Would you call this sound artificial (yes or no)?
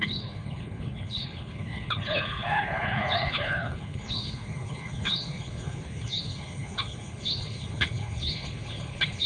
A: yes